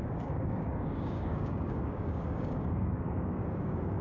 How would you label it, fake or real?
fake